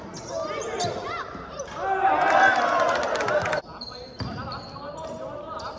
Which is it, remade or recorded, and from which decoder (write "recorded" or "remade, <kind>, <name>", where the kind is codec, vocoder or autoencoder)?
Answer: recorded